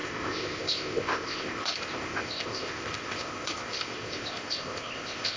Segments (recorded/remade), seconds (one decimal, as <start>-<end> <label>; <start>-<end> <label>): 0.0-5.4 remade